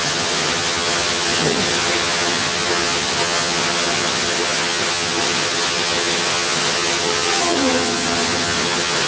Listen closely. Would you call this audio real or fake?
fake